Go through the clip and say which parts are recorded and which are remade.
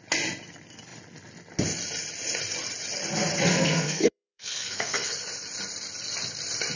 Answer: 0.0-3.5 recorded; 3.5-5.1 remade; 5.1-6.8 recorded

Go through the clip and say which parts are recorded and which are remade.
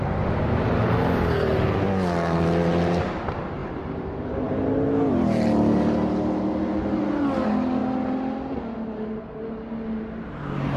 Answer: 0.0-10.8 recorded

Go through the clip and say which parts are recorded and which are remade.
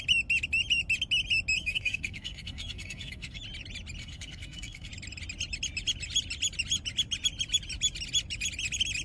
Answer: 0.0-1.6 recorded; 1.6-3.4 remade; 3.4-4.0 recorded; 4.0-4.9 remade; 4.9-9.0 recorded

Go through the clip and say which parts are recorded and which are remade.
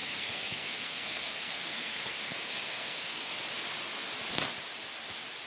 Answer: 0.0-3.3 remade; 3.3-5.5 recorded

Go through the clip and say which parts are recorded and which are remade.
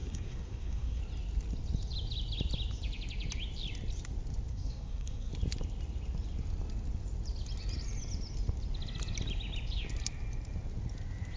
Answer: 0.0-1.0 remade; 1.0-4.5 recorded; 4.5-5.3 remade; 5.3-11.4 recorded